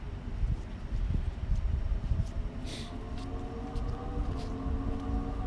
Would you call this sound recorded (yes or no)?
yes